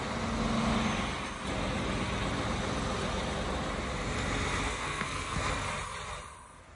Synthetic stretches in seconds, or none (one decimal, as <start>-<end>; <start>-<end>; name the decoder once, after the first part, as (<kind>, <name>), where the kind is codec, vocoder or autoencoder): 4.7-5.5 (codec, SNAC)